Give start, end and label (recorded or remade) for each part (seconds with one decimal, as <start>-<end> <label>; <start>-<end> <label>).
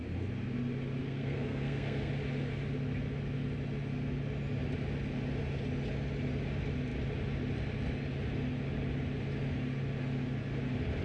0.0-1.0 recorded; 1.0-2.1 remade; 2.1-11.0 recorded